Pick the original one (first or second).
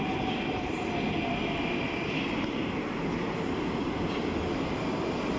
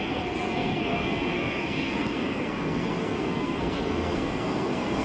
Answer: first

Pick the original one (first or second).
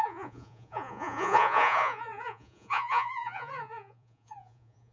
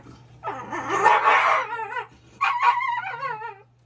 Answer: second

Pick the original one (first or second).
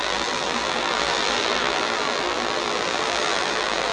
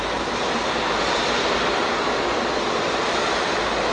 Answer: second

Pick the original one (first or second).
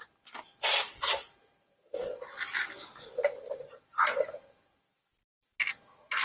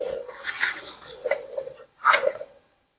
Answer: first